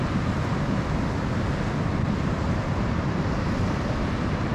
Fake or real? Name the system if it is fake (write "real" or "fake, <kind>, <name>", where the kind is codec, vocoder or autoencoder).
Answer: real